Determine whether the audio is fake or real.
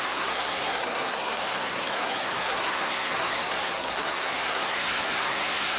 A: fake